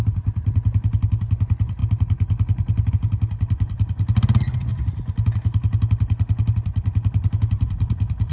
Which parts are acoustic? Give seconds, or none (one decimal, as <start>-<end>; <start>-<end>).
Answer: 0.0-8.3